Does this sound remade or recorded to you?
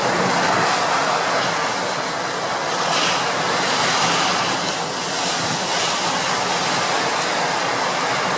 recorded